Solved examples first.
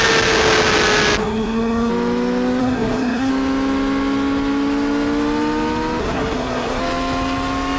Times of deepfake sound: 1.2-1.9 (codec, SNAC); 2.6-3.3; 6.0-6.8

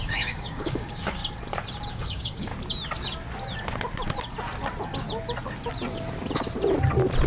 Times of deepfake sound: 0.0-1.2 (codec, DAC); 1.9-2.5

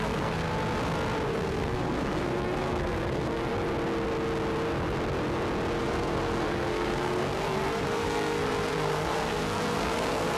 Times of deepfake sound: 0.0-0.5 (codec, SNAC); 1.3-3.5; 5.8-10.4

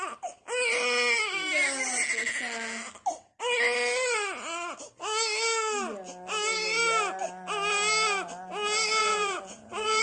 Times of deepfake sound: 9.0-10.0 (vocoder, Vocos)

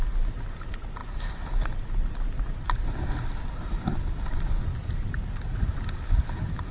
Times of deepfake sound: none

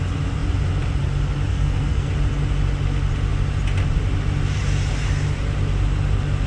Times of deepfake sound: 1.5-2.1 (codec, SNAC)

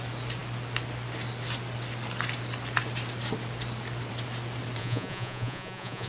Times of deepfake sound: 4.8-6.1 (vocoder, Vocos)

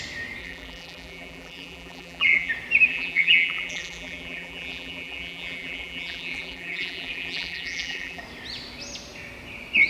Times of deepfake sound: 0.4-2.5 (vocoder, BigVGAN v2); 2.9-8.2